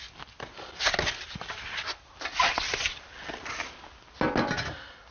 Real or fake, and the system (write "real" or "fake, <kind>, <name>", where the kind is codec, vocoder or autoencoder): real